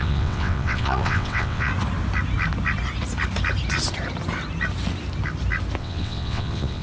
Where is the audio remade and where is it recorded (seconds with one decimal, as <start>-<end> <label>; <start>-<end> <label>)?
0.0-1.7 remade; 1.7-5.8 recorded; 5.8-6.8 remade